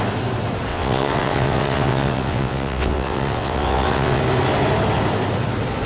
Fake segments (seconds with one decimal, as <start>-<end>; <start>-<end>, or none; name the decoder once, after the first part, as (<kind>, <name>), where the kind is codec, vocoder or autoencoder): 0.7-4.2 (vocoder, WaveNeXt)